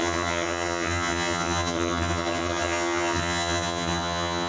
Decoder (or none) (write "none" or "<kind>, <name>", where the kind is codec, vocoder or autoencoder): vocoder, HiFi-GAN